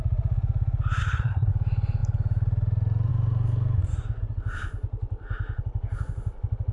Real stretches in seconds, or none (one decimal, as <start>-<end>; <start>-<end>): 0.0-1.0; 1.5-6.7